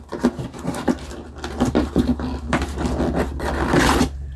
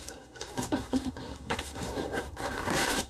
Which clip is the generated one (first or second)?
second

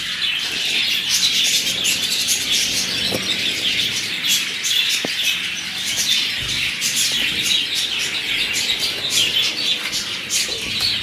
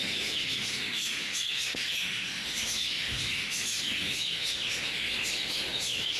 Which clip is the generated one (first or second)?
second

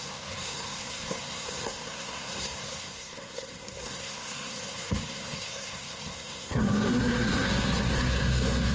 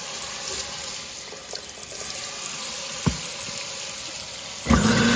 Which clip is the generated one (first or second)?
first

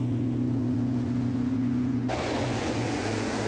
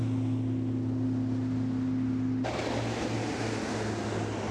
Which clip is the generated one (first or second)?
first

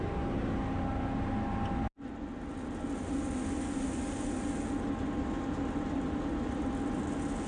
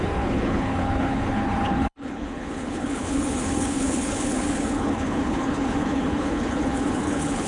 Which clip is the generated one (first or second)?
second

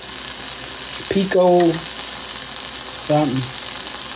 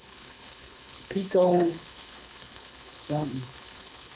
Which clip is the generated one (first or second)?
second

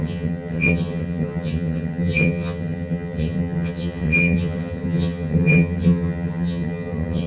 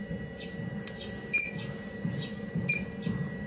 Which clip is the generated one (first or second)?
first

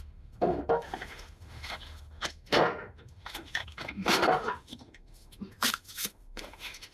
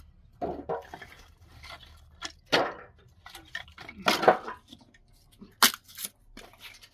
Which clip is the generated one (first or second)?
first